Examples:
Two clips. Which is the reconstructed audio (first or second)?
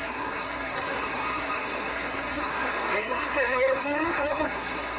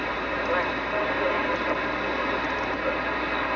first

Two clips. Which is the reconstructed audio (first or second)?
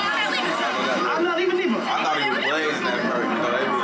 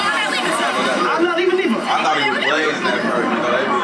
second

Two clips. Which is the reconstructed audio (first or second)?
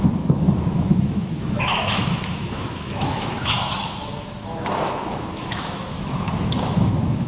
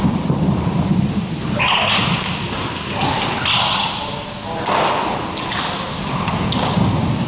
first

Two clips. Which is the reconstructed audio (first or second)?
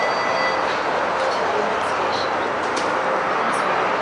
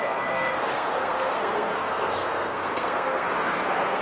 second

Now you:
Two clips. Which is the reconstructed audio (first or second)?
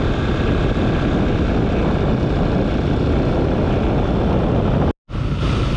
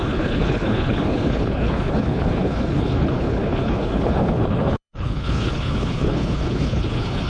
second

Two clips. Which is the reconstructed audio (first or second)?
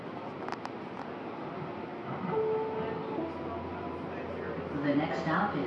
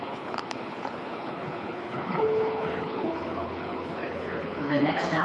second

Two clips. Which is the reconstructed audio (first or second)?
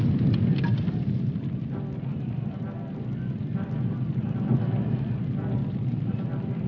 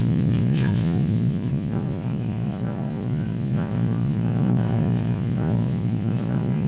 second